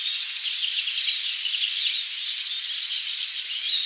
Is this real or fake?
real